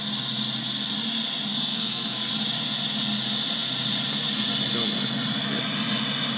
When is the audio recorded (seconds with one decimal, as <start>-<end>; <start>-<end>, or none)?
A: 0.0-1.5; 2.3-6.4